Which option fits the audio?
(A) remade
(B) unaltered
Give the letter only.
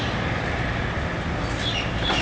B